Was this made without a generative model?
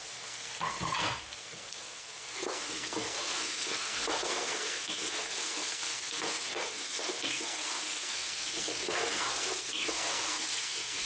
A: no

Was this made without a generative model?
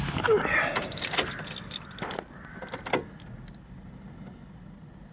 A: yes